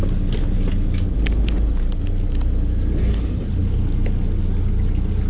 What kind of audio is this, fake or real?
real